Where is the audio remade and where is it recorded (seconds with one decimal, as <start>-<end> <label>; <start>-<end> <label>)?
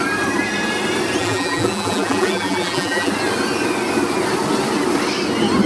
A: 0.0-1.2 recorded; 1.2-3.1 remade; 3.1-5.7 recorded